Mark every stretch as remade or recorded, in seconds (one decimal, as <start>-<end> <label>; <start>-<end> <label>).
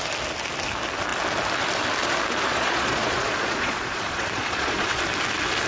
0.0-2.5 recorded; 2.5-5.0 remade; 5.0-5.7 recorded